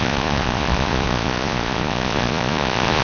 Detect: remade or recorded remade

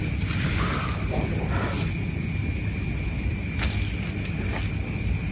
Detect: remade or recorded recorded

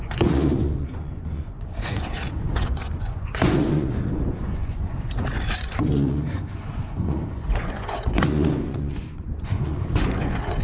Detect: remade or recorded remade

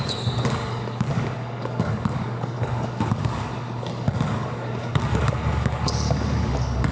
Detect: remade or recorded remade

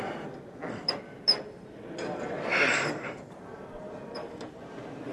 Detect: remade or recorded recorded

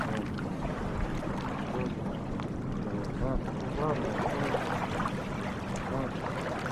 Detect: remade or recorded recorded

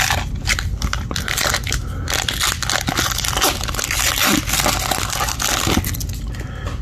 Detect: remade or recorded recorded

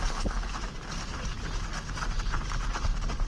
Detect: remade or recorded recorded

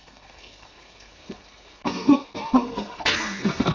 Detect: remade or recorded remade